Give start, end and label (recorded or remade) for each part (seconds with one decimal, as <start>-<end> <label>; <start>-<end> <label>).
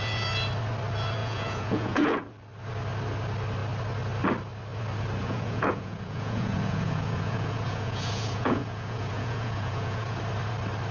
0.0-1.2 recorded; 1.2-2.2 remade; 2.2-5.2 recorded; 5.2-10.2 remade; 10.2-10.9 recorded